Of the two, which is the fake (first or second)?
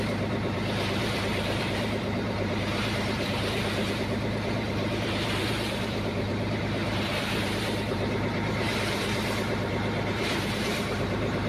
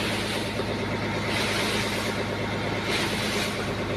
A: first